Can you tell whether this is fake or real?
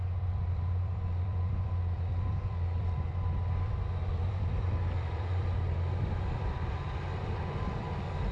fake